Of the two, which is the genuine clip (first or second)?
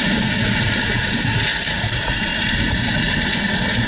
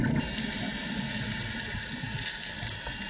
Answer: second